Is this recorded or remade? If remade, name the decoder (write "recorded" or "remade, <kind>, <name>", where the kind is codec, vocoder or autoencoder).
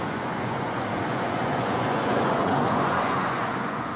remade, vocoder, Vocos